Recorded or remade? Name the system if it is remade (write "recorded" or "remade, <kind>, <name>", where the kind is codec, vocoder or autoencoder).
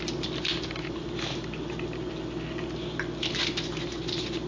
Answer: recorded